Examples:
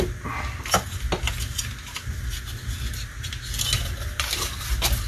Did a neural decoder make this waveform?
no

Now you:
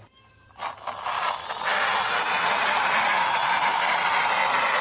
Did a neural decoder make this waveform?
no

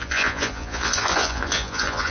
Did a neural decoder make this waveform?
yes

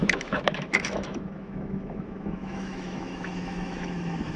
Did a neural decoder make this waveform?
yes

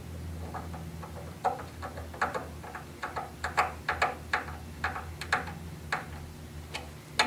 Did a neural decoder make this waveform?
no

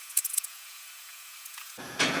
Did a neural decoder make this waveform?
yes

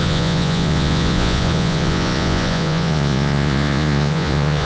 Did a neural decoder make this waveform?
yes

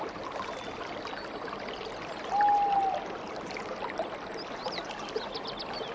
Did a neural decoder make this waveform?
no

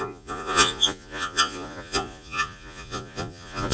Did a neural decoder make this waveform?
yes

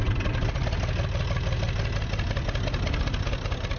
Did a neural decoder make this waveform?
no